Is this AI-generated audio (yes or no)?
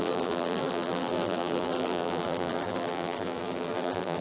yes